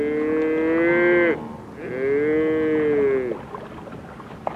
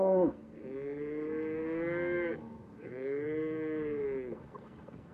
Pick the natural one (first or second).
first